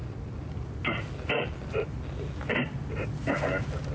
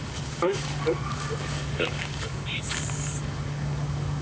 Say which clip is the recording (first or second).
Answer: first